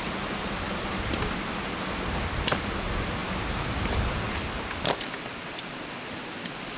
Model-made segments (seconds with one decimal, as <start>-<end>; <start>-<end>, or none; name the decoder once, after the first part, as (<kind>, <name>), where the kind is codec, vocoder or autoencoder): 3.2-4.2 (vocoder, BigVGAN v2)